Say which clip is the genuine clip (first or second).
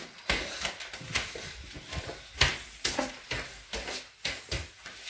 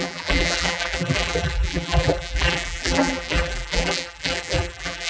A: first